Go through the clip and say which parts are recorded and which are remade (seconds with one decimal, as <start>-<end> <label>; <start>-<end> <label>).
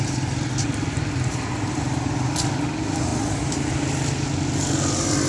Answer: 0.0-5.3 recorded